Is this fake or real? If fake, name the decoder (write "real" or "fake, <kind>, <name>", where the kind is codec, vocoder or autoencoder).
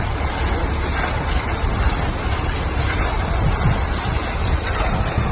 real